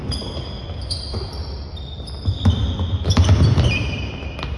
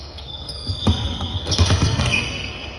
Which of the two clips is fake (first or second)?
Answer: second